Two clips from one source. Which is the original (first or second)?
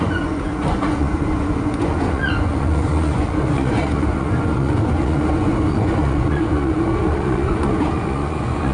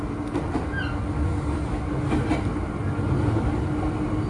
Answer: second